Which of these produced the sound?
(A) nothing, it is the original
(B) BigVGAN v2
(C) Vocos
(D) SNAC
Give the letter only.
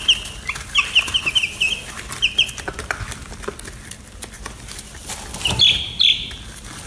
A